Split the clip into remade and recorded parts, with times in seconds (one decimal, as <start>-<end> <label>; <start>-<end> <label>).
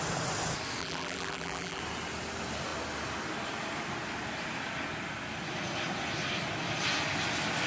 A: 0.0-0.8 recorded; 0.8-1.8 remade; 1.8-7.7 recorded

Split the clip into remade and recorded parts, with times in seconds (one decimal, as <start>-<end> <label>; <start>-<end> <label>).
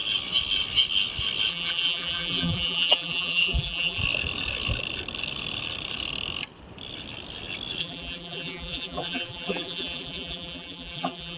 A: 0.0-1.5 recorded; 1.5-4.0 remade; 4.0-7.8 recorded; 7.8-11.4 remade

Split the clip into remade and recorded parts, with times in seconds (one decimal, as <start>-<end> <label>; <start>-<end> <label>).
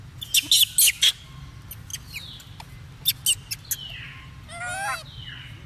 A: 0.0-5.7 recorded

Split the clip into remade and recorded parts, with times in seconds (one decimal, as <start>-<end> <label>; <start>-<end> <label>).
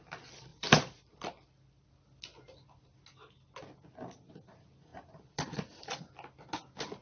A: 0.0-0.5 recorded; 0.5-1.9 remade; 1.9-4.9 recorded; 4.9-6.0 remade; 6.0-7.0 recorded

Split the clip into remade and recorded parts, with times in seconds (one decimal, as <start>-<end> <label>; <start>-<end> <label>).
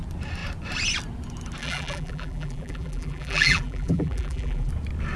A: 0.0-1.6 recorded; 1.6-4.7 remade; 4.7-5.2 recorded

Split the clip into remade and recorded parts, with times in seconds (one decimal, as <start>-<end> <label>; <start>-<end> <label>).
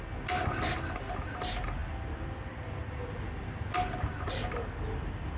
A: 0.0-5.4 recorded